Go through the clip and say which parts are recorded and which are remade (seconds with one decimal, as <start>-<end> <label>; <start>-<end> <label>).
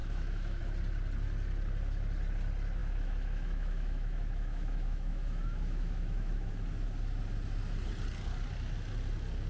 0.0-0.6 remade; 0.6-2.8 recorded; 2.8-6.5 remade; 6.5-9.5 recorded